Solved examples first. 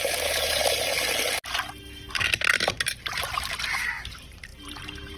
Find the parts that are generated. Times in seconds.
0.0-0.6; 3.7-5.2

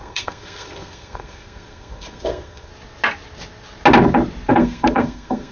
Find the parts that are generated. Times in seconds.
0.0-2.7; 4.5-5.5

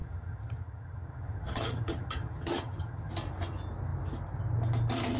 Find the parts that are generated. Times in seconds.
0.0-3.1